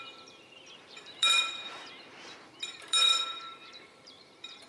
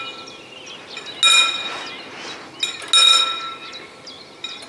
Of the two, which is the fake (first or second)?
first